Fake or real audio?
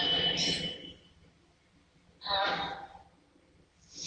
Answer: fake